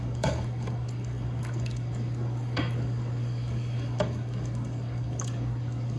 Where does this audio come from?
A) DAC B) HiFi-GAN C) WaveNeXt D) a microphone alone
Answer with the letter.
A